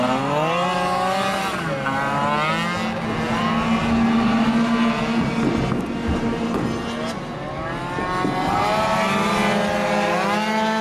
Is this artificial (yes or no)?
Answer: no